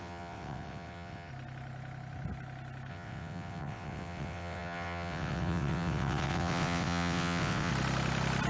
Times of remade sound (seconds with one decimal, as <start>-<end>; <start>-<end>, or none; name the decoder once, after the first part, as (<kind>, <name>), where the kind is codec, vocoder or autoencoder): 0.0-1.3 (vocoder, WaveNeXt); 2.9-7.7